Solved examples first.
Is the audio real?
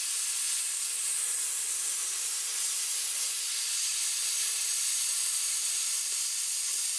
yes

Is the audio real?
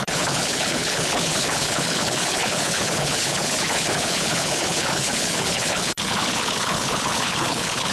no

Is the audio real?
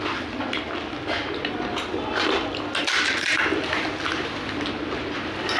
yes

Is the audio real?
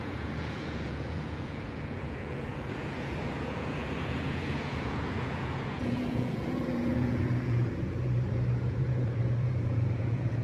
no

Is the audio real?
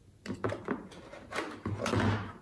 yes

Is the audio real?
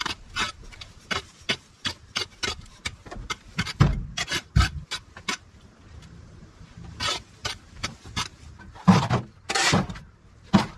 no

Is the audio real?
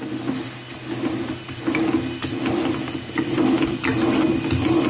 yes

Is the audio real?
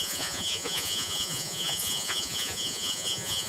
no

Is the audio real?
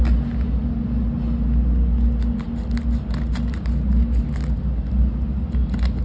yes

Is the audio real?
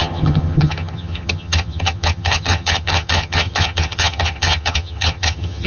no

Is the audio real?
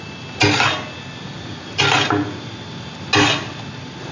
yes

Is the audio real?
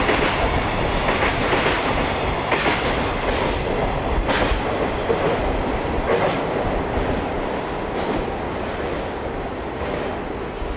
yes